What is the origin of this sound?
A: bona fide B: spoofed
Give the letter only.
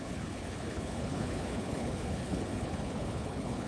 B